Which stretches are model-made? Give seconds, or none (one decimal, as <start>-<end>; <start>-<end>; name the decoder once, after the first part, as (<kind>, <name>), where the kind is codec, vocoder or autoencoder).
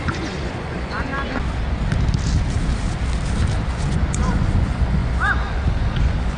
0.0-1.1 (vocoder, Vocos); 3.7-6.4